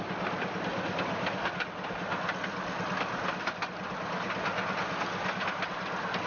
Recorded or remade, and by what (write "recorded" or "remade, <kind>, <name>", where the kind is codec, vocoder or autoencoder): recorded